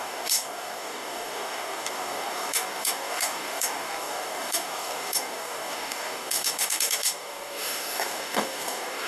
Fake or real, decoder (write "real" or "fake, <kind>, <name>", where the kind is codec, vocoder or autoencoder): fake, codec, DAC